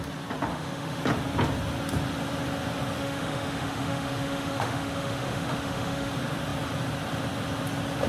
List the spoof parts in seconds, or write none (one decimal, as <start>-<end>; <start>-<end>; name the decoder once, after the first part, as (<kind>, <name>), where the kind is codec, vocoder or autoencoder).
0.5-1.0 (autoencoder, DAC-VAE); 3.0-6.1